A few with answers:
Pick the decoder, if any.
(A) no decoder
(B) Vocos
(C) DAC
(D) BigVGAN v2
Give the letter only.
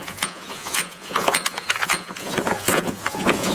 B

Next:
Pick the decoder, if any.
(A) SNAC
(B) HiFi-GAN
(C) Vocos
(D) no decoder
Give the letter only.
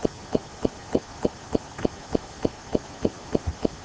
D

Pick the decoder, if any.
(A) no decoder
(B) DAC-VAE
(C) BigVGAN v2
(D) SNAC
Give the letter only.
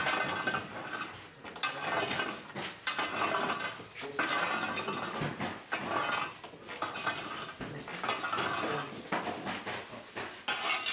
A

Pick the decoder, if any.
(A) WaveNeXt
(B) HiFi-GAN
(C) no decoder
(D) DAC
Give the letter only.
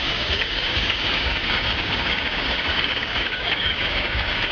D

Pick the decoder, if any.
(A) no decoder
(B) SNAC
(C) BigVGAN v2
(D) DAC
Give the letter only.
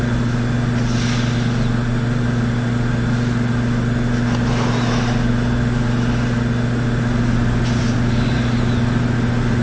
A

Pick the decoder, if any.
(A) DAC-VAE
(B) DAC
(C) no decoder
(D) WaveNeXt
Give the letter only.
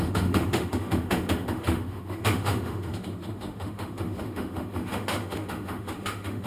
A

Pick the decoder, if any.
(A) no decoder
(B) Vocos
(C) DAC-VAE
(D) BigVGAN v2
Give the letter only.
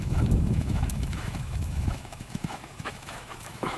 C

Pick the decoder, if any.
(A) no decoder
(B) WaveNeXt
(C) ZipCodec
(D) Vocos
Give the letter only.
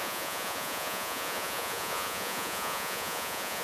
D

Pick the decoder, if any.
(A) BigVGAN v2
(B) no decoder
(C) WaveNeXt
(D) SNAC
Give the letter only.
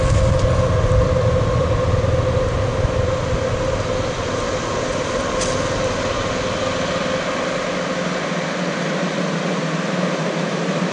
B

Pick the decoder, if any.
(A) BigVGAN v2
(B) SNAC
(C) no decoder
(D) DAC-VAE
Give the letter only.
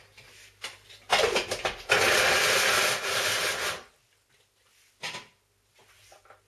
C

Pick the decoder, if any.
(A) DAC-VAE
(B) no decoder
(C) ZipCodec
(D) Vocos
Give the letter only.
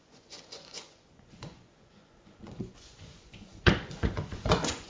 D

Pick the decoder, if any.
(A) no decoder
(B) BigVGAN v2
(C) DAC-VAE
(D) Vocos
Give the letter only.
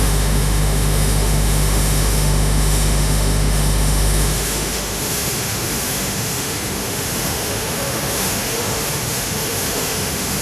C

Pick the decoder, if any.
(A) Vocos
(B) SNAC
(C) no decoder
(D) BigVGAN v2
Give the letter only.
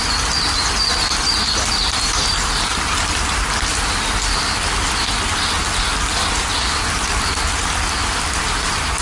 C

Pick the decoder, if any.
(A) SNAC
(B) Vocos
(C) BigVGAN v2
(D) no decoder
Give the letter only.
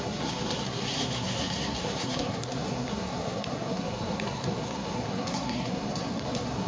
A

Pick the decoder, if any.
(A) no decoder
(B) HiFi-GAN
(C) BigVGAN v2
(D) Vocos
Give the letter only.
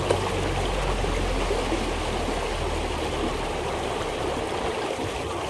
A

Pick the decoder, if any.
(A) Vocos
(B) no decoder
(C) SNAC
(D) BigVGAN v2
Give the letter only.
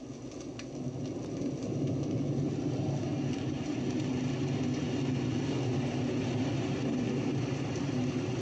B